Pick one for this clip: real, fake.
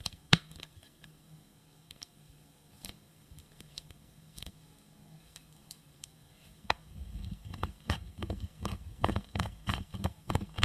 fake